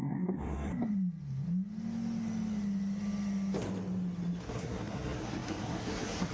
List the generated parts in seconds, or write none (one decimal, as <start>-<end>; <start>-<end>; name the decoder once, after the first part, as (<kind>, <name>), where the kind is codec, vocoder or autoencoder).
0.0-0.7 (codec, SNAC); 4.5-6.3